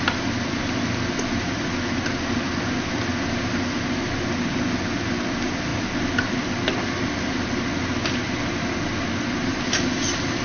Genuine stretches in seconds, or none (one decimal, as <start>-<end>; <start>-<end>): 0.0-10.4